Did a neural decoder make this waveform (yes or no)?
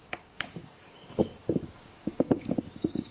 yes